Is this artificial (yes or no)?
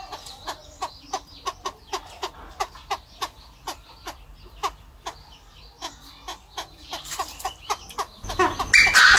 no